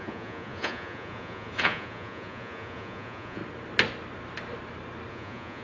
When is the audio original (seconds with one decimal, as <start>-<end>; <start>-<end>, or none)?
3.4-5.1